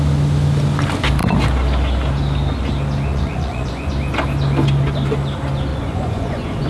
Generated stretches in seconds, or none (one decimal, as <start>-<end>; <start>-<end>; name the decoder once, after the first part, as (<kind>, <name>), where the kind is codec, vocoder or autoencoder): 3.1-3.9 (vocoder, Vocos); 5.7-6.7